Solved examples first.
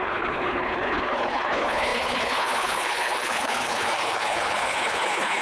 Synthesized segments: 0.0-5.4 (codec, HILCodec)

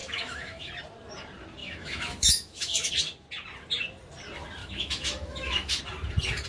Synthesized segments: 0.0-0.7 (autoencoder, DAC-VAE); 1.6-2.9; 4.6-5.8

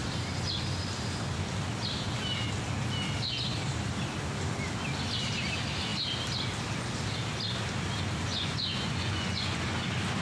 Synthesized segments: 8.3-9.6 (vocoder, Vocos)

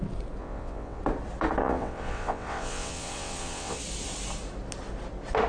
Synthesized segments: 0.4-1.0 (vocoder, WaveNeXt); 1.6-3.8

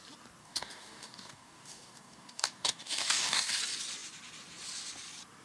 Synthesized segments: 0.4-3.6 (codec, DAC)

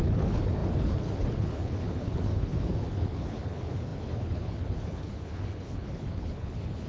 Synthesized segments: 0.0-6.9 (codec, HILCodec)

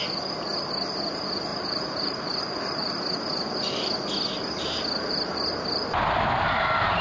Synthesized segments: 1.5-2.9 (vocoder, BigVGAN v2)

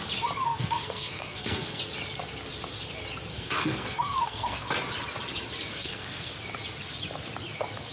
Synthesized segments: 0.5-1.8 (codec, SNAC); 3.3-4.7; 5.7-6.3